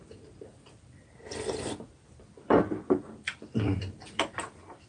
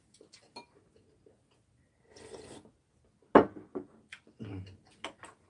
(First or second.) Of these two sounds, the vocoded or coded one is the first